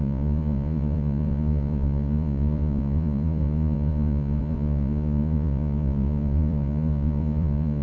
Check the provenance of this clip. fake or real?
fake